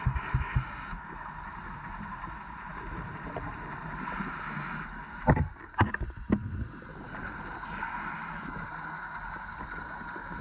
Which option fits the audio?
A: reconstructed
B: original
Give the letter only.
B